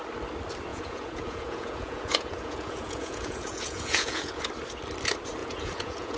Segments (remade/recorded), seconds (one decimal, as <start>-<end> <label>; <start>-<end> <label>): 0.0-0.7 recorded; 0.7-4.4 remade; 4.4-5.4 recorded; 5.4-6.2 remade